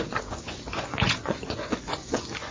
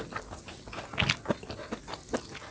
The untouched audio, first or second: second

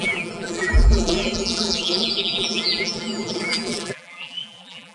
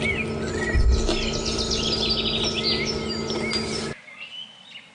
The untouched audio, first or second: second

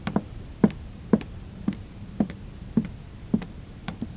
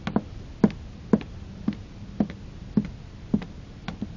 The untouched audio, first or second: second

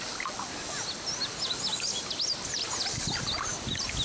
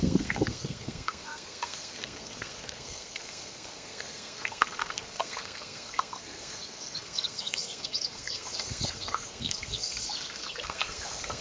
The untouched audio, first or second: first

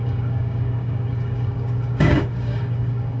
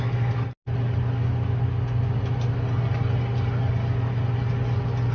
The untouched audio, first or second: second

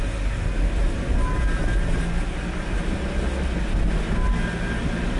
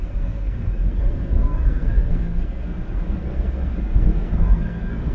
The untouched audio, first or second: first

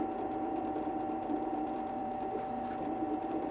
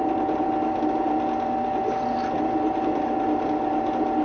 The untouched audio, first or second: second